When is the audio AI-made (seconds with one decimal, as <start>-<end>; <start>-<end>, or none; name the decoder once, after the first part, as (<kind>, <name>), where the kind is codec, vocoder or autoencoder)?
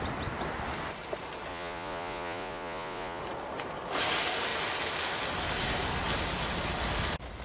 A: 1.5-3.2 (vocoder, Vocos)